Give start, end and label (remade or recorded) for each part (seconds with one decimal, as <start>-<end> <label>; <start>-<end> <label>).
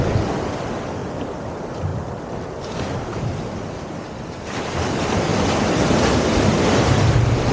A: 0.0-1.0 remade; 1.0-1.5 recorded; 1.5-1.9 remade; 1.9-2.5 recorded; 2.5-5.3 remade; 5.3-7.1 recorded; 7.1-7.5 remade